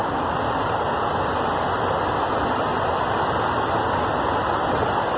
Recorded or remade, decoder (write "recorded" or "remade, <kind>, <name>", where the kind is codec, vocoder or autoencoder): recorded